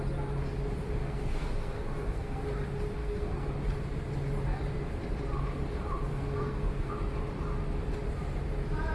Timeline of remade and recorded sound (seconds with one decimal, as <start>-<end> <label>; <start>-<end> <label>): 0.0-1.0 recorded; 1.0-2.4 remade; 2.4-3.0 recorded; 3.0-3.5 remade; 3.5-6.1 recorded; 6.1-6.9 remade; 6.9-8.9 recorded